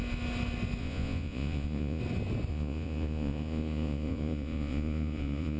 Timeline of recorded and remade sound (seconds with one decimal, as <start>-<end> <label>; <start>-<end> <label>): 0.0-0.8 recorded; 0.8-2.0 remade; 2.0-2.5 recorded; 2.5-5.6 remade